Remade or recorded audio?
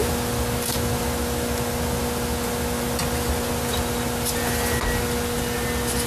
recorded